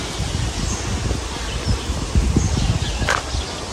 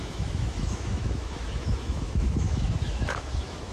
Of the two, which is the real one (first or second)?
first